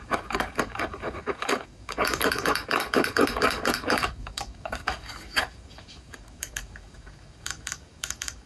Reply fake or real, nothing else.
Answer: fake